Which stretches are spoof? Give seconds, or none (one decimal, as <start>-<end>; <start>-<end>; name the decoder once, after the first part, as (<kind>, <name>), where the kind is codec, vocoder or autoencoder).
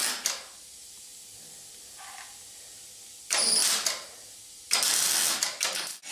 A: 0.6-1.1 (vocoder, BigVGAN v2); 1.7-3.6; 5.4-6.1